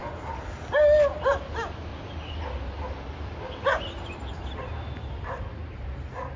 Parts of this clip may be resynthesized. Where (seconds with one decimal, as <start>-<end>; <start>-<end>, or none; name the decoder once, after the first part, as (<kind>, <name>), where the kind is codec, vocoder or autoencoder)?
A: none